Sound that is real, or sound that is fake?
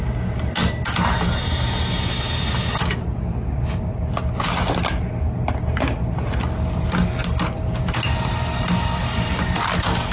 real